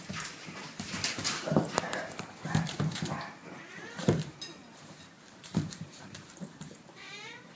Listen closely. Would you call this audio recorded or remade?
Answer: remade